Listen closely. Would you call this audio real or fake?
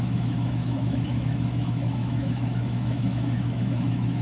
fake